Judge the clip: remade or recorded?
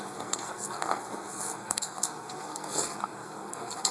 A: remade